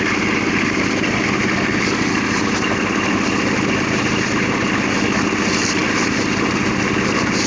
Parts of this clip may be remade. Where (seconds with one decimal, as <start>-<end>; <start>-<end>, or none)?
none